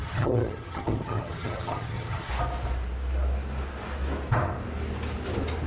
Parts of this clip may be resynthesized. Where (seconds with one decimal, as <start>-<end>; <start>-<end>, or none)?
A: 0.0-2.3